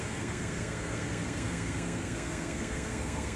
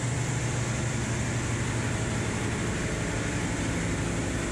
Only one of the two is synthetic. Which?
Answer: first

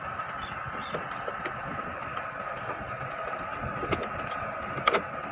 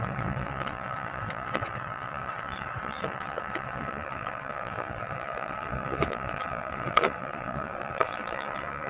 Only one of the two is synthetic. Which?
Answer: second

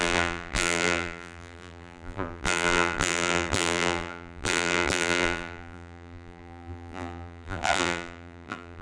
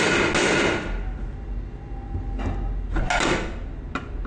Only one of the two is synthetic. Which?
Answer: first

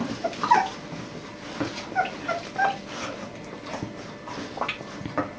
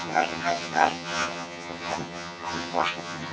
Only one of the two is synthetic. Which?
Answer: second